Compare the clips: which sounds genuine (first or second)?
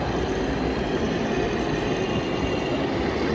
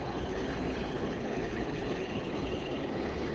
first